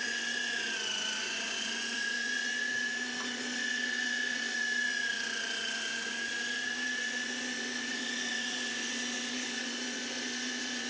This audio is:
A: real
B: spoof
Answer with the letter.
B